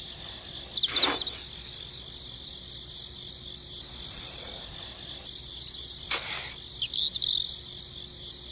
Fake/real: real